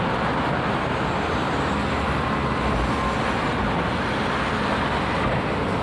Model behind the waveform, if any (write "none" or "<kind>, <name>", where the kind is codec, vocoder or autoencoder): none